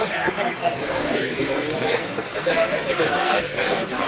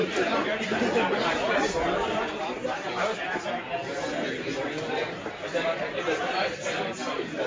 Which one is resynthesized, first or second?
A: first